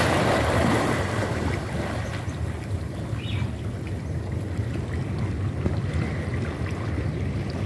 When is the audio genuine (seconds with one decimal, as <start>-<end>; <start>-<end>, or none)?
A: 2.1-6.6